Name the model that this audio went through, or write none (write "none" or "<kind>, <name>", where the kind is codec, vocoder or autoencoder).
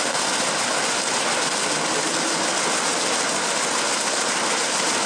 none